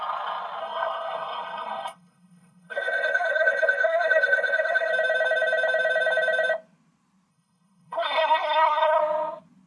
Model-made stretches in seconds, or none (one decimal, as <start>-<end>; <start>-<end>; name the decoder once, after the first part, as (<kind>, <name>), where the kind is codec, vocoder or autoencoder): 0.6-4.9 (codec, SNAC); 7.3-9.0